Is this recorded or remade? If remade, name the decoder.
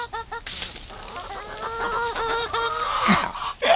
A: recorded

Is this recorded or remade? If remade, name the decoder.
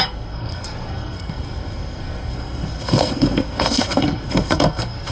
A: remade, codec, SNAC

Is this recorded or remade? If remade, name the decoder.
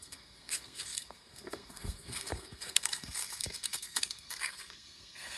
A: remade, codec, SNAC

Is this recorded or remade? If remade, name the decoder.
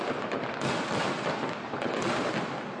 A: recorded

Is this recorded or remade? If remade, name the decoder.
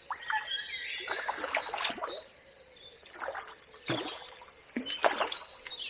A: recorded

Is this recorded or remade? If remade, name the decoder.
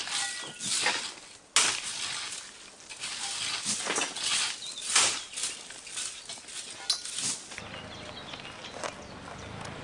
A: recorded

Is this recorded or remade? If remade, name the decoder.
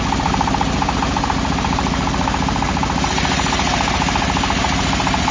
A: recorded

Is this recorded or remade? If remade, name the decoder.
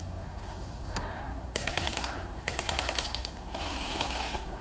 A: remade, codec, SNAC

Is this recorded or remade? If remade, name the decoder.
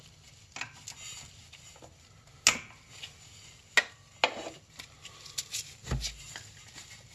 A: recorded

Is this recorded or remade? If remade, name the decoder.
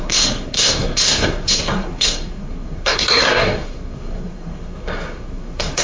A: remade, codec, SNAC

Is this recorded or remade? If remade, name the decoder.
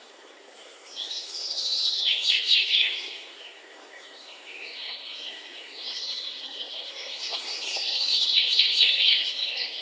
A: remade, codec, SNAC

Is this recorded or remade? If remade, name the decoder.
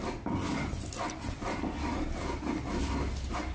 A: recorded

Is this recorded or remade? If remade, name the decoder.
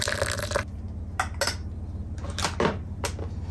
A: recorded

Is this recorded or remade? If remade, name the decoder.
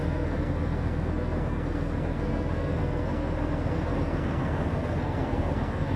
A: remade, codec, SNAC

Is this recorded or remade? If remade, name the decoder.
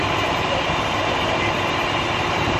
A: recorded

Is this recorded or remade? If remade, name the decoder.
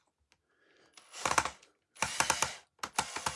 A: recorded